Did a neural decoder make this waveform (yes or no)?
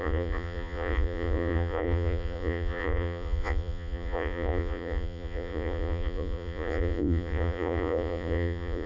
yes